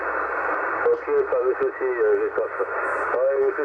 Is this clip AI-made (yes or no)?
no